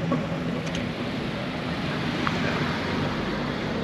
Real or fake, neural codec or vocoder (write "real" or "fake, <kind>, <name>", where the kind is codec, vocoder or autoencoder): fake, vocoder, BigVGAN v2